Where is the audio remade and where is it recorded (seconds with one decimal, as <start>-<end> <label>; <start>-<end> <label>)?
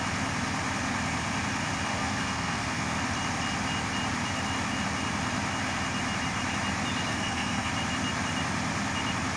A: 0.0-1.9 recorded; 1.9-3.0 remade; 3.0-7.1 recorded; 7.1-7.7 remade; 7.7-9.4 recorded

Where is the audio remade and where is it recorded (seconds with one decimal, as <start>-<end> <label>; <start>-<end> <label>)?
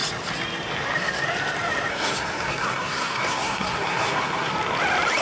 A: 0.0-1.9 recorded; 1.9-4.5 remade; 4.5-5.2 recorded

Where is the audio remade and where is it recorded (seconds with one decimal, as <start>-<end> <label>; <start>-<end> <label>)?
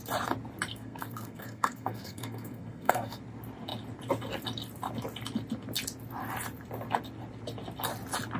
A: 0.0-0.7 recorded; 0.7-3.2 remade; 3.2-8.4 recorded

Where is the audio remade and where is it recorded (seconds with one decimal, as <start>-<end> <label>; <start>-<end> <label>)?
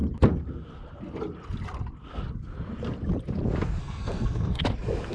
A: 0.0-3.8 recorded; 3.8-4.6 remade; 4.6-5.1 recorded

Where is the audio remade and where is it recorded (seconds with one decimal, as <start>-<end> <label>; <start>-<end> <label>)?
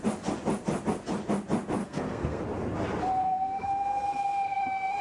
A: 0.0-1.8 recorded; 1.8-2.4 remade; 2.4-3.2 recorded; 3.2-4.6 remade; 4.6-5.0 recorded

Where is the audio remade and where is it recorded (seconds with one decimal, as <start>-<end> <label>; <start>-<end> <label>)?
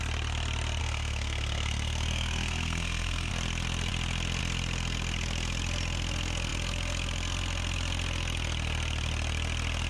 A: 0.0-0.8 recorded; 0.8-3.3 remade; 3.3-9.9 recorded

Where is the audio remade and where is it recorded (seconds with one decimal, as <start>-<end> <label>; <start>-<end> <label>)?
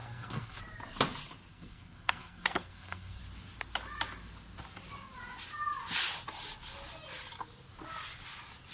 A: 0.0-0.6 remade; 0.6-1.5 recorded; 1.5-3.2 remade; 3.2-8.7 recorded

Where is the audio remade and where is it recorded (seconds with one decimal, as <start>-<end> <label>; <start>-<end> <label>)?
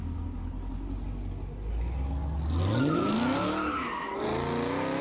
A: 0.0-5.0 recorded